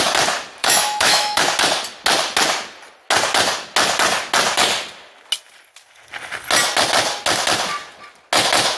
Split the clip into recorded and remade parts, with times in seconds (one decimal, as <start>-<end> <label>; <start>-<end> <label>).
0.0-0.6 recorded; 0.6-1.4 remade; 1.4-8.8 recorded